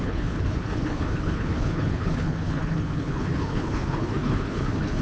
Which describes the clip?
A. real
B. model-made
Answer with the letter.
B